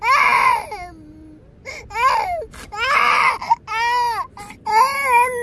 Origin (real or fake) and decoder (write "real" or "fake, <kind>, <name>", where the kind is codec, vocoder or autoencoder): real